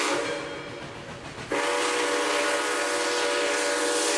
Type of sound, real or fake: real